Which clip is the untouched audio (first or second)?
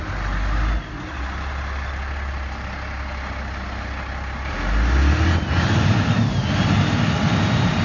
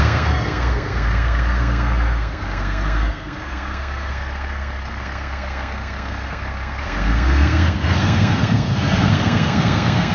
first